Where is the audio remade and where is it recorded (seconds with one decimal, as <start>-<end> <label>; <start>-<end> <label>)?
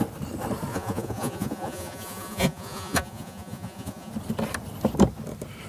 0.0-0.7 recorded; 0.7-4.1 remade; 4.1-5.7 recorded